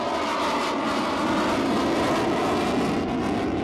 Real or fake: real